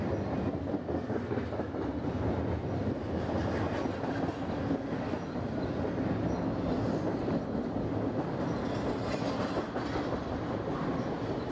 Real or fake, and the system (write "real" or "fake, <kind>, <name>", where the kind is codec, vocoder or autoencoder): real